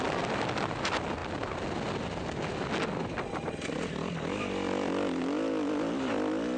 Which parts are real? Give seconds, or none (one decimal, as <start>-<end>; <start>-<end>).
0.0-6.6